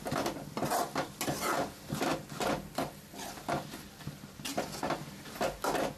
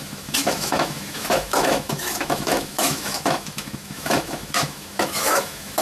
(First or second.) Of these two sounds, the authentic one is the first